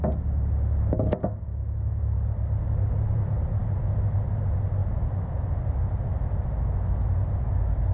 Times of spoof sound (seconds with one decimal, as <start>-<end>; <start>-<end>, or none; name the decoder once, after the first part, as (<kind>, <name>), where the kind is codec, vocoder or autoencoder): none